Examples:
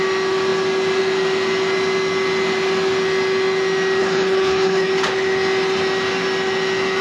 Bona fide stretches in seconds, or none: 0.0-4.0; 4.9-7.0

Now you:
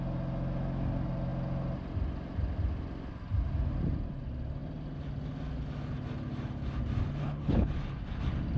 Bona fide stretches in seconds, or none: 0.0-7.2; 7.7-8.6

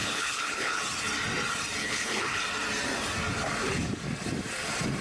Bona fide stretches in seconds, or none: 0.8-1.8; 2.4-5.0

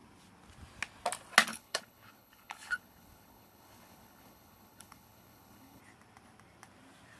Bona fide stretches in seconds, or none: 0.0-1.5; 5.8-7.2

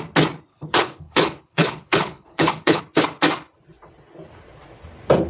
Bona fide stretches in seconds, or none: 0.0-0.5; 2.8-5.3

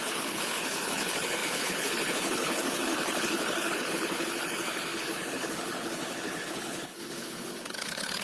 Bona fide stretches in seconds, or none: none

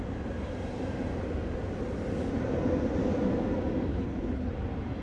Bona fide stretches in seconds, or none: 0.0-3.9; 4.5-5.0